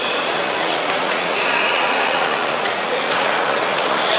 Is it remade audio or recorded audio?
remade